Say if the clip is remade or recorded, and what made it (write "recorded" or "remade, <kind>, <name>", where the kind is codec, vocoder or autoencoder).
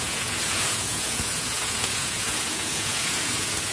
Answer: remade, vocoder, Vocos